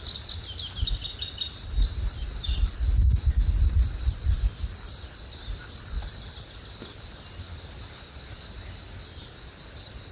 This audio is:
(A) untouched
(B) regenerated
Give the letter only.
A